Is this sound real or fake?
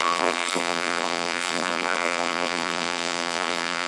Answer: fake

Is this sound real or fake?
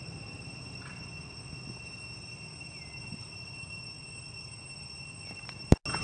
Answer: real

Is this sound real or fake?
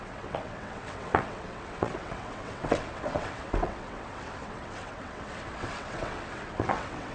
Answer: fake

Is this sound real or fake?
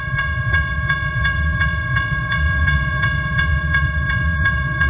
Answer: fake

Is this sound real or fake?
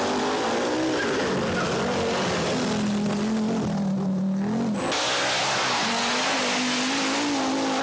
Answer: real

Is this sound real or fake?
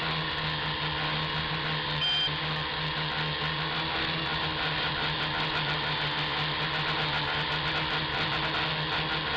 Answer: real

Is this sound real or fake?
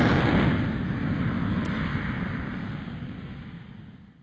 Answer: real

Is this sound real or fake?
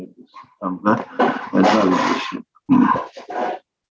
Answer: real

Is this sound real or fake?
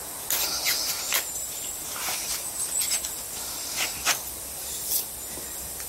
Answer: real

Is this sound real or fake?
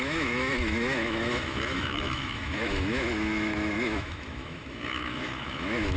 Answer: fake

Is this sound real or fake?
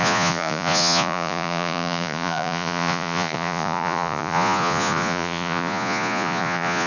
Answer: fake